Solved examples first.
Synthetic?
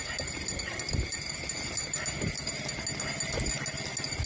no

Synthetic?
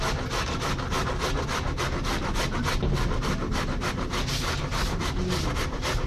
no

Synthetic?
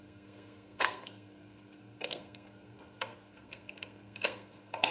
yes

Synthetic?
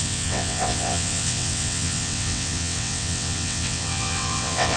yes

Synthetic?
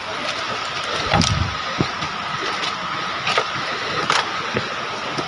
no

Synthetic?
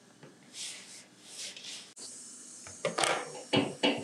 no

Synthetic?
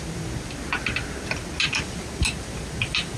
no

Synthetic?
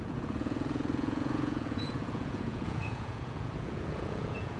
yes